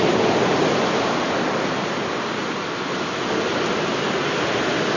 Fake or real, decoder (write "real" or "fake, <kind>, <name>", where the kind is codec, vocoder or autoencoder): real